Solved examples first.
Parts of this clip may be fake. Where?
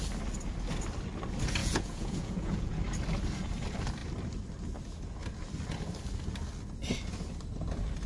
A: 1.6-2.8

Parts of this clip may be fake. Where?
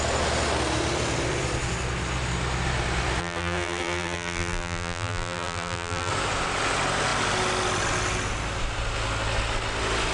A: 3.2-6.1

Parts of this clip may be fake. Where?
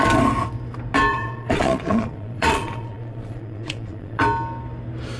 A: 1.1-4.2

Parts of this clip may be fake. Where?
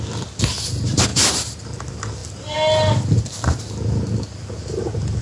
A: none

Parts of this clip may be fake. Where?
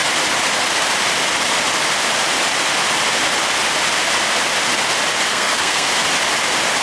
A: 5.3-5.9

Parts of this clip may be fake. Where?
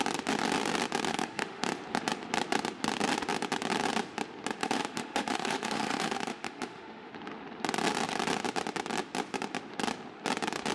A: 1.1-1.7; 4.6-7.1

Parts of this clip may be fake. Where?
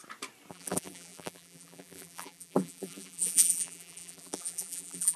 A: 0.5-5.2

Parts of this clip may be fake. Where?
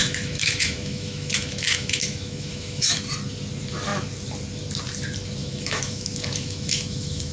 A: 0.0-3.0; 5.4-7.3